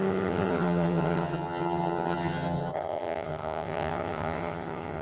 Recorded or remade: remade